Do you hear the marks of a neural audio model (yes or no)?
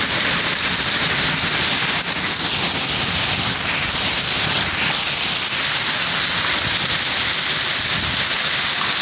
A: no